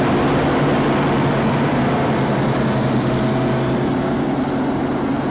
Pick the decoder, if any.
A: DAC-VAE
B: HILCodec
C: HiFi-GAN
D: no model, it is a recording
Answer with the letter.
D